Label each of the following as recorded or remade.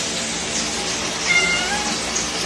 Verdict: recorded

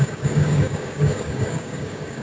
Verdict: remade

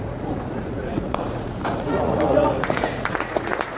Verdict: remade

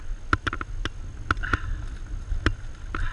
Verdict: recorded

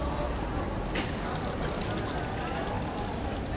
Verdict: recorded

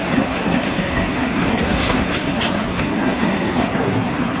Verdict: remade